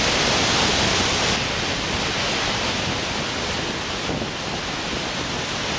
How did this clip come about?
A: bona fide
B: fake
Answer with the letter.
A